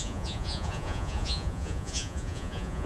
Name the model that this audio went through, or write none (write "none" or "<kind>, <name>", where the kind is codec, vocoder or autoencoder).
vocoder, Vocos